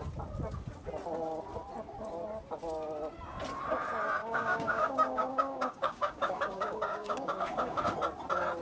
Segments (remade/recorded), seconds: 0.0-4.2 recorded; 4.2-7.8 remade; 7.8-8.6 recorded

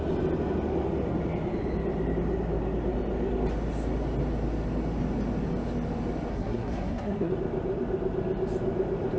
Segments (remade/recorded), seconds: 0.0-6.3 recorded; 6.3-7.3 remade; 7.3-9.2 recorded

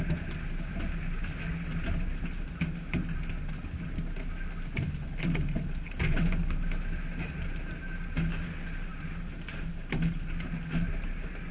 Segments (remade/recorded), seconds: 0.0-11.5 recorded

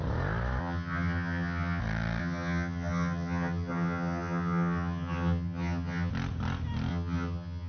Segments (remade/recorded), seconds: 0.0-0.6 recorded; 0.6-1.8 remade; 1.8-2.2 recorded; 2.2-6.1 remade; 6.1-6.9 recorded; 6.9-7.7 remade

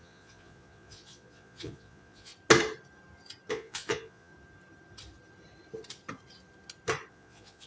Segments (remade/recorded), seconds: 0.0-2.3 remade; 2.3-3.5 recorded; 3.5-4.3 remade; 4.3-7.1 recorded; 7.1-7.7 remade

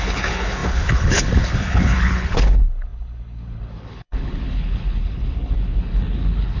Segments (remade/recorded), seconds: 0.0-6.6 remade

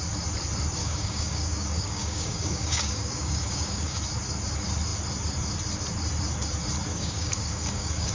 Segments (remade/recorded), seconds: 0.0-0.8 recorded; 0.8-4.0 remade; 4.0-6.9 recorded; 6.9-8.1 remade

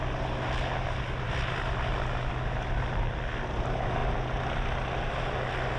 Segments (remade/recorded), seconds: 0.0-5.8 recorded